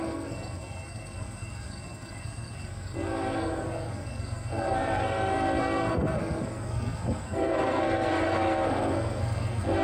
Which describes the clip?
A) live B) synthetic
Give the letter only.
B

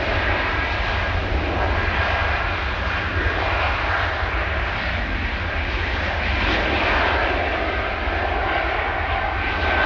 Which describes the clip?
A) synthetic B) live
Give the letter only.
B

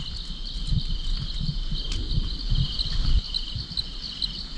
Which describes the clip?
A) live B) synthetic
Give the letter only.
A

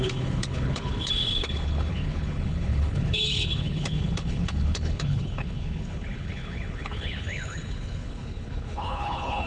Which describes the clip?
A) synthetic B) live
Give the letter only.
A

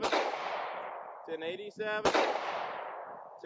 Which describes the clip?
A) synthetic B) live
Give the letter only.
B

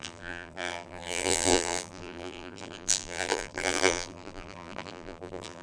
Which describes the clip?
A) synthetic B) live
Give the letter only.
A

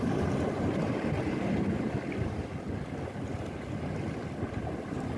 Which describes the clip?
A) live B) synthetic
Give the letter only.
A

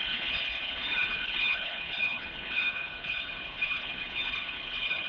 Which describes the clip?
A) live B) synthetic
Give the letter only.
B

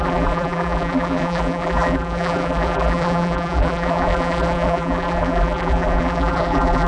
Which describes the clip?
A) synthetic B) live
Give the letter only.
A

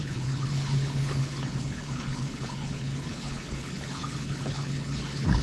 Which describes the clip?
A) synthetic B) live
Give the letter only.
A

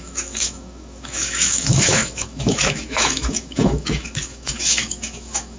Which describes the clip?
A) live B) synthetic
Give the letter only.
B